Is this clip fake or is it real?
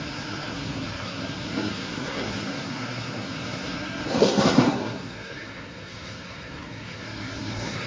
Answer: fake